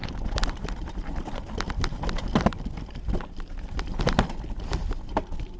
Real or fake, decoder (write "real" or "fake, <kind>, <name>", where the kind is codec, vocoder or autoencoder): real